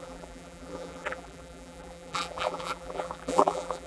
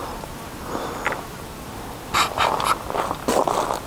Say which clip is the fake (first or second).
first